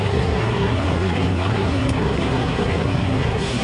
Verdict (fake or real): fake